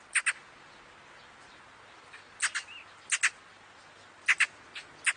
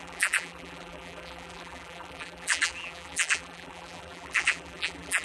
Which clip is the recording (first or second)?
first